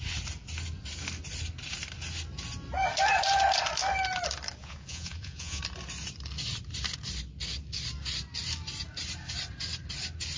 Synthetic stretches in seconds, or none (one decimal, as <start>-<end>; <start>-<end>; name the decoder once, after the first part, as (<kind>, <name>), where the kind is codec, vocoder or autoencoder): 4.6-5.6 (vocoder, Vocos)